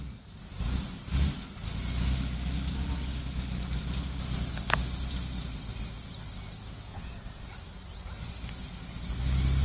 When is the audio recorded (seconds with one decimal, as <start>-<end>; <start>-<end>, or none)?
0.0-6.9; 7.5-9.6

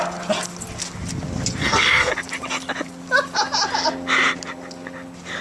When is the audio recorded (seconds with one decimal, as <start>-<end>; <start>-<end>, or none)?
0.0-1.6; 2.1-5.4

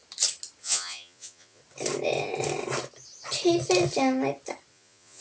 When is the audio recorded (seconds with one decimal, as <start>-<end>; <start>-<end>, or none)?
0.0-0.6; 1.6-4.7

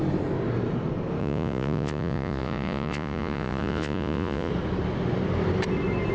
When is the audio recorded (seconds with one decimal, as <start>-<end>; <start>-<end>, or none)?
0.0-1.2; 4.5-6.1

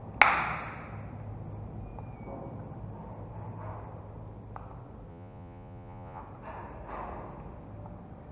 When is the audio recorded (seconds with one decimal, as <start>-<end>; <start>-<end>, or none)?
0.0-5.1; 6.2-8.3